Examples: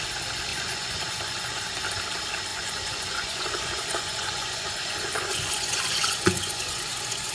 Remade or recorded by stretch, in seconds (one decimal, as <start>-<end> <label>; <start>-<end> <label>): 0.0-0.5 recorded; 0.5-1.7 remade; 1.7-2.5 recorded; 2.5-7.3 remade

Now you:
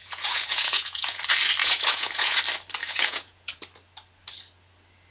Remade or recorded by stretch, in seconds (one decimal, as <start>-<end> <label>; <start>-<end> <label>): 0.0-1.2 remade; 1.2-1.6 recorded; 1.6-2.4 remade; 2.4-2.8 recorded; 2.8-3.6 remade; 3.6-5.1 recorded

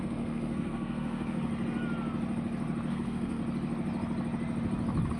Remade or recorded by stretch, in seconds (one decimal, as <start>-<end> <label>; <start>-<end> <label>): 0.0-1.5 remade; 1.5-2.9 recorded; 2.9-3.4 remade; 3.4-5.2 recorded

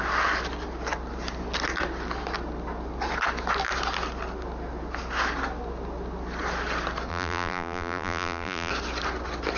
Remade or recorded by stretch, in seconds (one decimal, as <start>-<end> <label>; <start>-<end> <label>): 0.0-7.1 recorded; 7.1-8.7 remade; 8.7-9.6 recorded

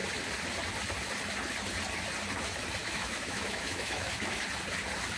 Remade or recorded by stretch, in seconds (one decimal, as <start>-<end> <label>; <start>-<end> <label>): 0.0-2.8 recorded; 2.8-4.4 remade; 4.4-5.2 recorded

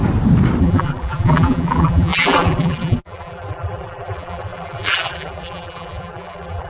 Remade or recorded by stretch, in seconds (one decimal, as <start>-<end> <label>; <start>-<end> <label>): 0.0-0.6 recorded; 0.6-6.7 remade

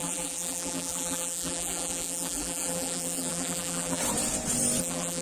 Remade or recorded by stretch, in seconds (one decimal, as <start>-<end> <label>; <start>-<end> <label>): 0.0-4.0 remade; 4.0-4.8 recorded; 4.8-5.2 remade